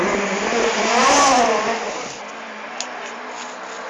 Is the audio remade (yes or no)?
no